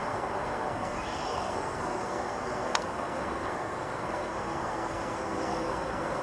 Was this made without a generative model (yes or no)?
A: no